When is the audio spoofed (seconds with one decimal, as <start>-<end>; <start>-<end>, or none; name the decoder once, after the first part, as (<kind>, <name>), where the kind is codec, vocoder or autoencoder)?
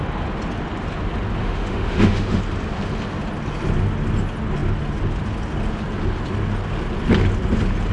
1.4-2.4 (autoencoder, DAC-VAE)